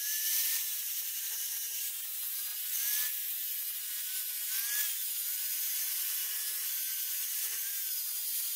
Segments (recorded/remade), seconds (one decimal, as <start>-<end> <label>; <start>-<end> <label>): 0.0-2.5 remade; 2.5-5.3 recorded; 5.3-8.6 remade